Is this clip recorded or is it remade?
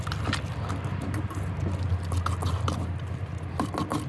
recorded